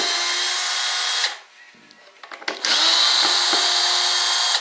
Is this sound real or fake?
real